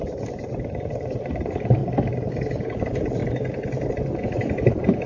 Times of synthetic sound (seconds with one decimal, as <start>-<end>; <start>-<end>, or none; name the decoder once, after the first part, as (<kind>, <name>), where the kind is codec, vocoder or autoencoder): 0.0-1.8 (vocoder, BigVGAN v2); 2.8-3.2; 3.9-5.1

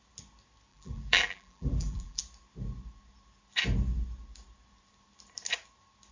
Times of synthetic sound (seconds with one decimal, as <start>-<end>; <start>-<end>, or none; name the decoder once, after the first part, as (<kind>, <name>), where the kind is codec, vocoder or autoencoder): 0.7-2.2 (vocoder, BigVGAN v2)

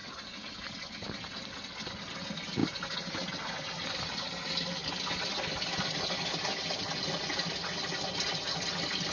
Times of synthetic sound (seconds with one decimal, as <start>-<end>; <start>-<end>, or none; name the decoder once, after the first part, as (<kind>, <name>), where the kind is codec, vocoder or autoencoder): none